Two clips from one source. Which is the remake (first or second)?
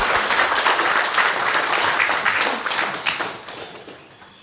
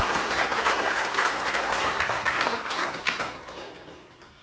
second